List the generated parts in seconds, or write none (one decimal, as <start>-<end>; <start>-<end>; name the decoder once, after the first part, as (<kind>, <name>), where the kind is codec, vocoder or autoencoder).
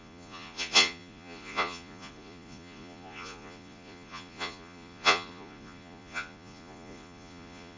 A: 0.0-7.8 (vocoder, Vocos)